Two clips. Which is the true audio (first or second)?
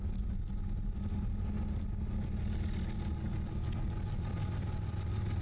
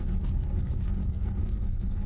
first